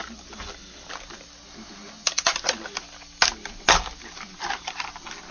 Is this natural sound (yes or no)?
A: yes